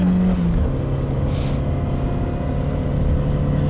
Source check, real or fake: real